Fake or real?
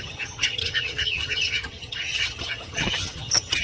fake